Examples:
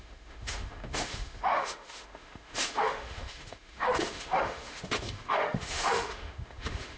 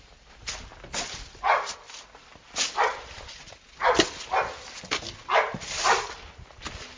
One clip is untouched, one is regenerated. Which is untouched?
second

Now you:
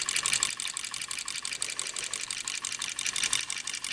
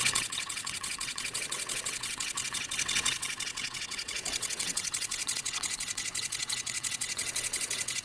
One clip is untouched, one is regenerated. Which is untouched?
first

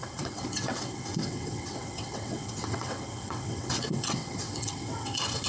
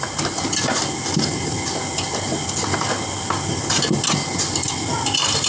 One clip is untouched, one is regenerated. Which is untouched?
second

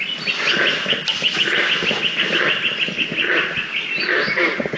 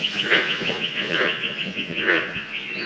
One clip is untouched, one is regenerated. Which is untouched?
first